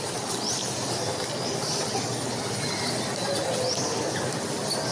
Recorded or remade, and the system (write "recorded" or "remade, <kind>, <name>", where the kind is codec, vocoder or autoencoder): recorded